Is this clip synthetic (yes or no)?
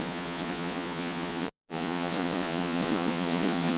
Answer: yes